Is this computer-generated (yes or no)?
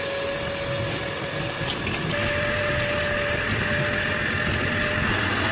no